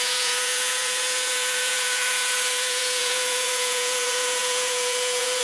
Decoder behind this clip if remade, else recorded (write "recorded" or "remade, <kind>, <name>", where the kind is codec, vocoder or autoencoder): remade, vocoder, Vocos